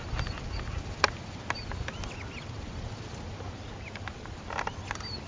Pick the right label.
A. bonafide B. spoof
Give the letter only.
A